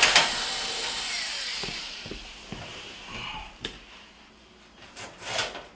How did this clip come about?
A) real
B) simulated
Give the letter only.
B